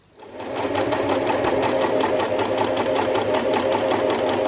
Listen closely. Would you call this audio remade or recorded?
recorded